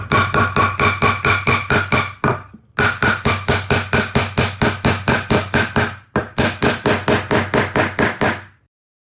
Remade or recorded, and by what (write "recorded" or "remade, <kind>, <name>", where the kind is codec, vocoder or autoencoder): recorded